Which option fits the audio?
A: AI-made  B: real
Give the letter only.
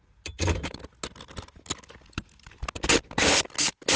B